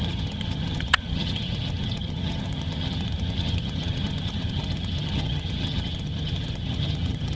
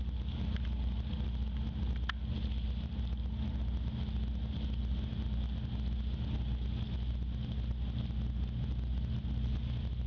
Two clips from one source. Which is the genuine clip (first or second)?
second